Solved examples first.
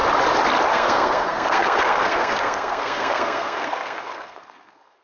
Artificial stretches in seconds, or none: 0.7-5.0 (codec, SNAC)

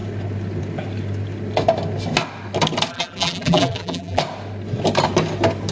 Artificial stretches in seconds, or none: 2.9-4.2 (vocoder, BigVGAN v2)

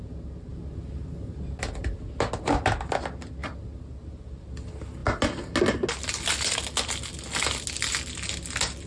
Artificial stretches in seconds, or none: none

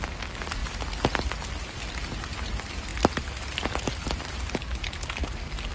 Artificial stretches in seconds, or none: none

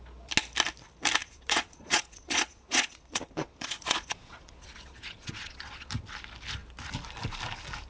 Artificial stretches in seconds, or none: 1.2-5.9 (vocoder, Vocos)

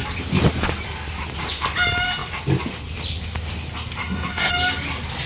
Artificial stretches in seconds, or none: 4.0-4.5 (codec, SNAC)

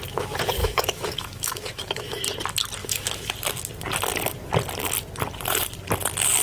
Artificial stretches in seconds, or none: 0.6-2.2 (autoencoder, DAC-VAE); 2.8-3.3